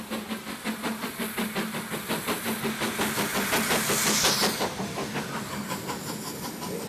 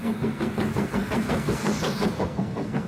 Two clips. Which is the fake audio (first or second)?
second